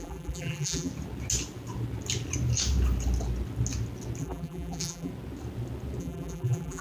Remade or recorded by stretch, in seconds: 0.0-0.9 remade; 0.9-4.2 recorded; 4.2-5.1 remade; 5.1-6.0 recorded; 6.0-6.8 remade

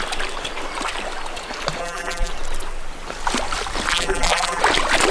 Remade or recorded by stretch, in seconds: 0.0-1.8 recorded; 1.8-2.3 remade; 2.3-3.9 recorded; 3.9-4.6 remade; 4.6-5.1 recorded

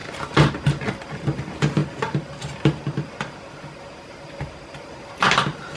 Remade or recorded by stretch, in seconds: 0.0-5.8 recorded

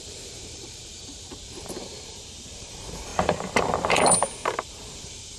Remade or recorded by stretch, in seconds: 0.0-5.4 remade